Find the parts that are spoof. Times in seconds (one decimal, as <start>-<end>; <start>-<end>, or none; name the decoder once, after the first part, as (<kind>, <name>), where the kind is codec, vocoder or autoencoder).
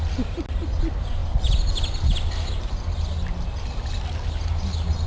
none